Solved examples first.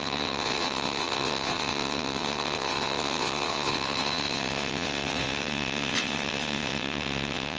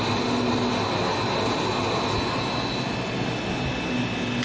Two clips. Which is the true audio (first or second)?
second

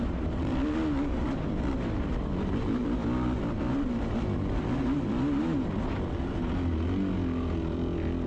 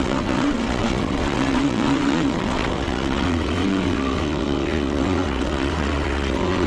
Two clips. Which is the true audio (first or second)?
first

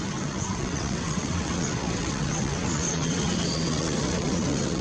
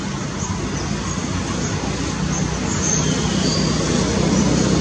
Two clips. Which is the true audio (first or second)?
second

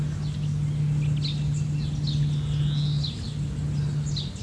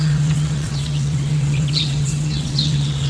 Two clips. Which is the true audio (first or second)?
first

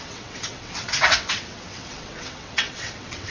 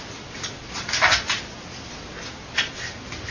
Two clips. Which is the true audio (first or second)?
second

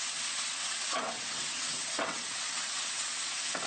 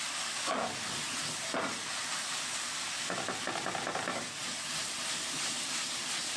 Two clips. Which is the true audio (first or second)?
second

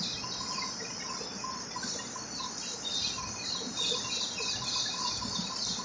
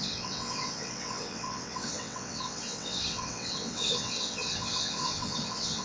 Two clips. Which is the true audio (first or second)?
first